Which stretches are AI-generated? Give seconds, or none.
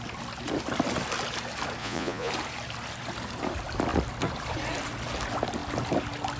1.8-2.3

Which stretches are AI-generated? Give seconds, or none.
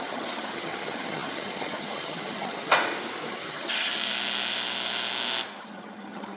0.0-2.7; 3.3-3.9; 5.6-6.4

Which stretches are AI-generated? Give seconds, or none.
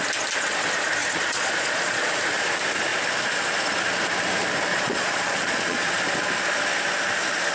1.0-2.1; 4.7-6.0